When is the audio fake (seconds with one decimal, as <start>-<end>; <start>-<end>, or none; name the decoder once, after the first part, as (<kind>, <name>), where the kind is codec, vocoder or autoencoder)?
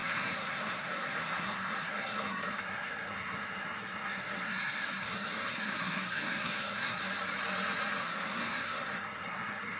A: 0.0-7.0 (codec, SNAC); 8.0-9.8